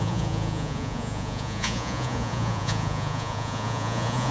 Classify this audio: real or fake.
fake